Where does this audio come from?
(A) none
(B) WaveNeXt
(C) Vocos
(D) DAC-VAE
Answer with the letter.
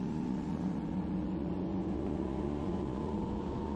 C